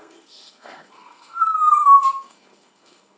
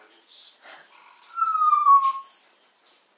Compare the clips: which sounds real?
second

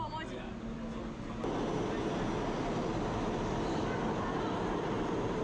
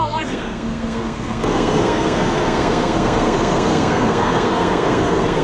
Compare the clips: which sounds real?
first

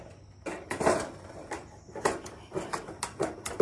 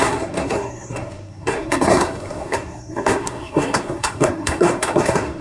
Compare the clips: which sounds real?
first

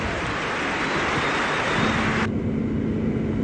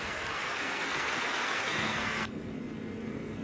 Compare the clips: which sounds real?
first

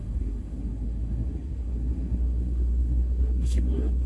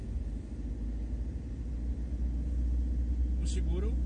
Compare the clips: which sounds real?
second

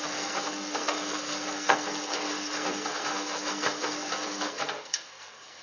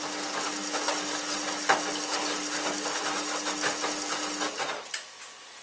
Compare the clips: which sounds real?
second